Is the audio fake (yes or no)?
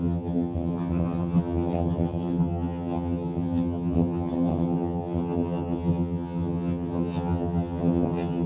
yes